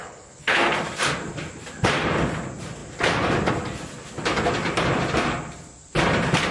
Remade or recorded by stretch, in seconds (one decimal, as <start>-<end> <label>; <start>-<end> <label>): 0.0-0.6 remade; 0.6-6.5 recorded